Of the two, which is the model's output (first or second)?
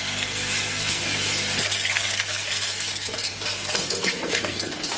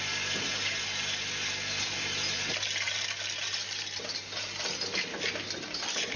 first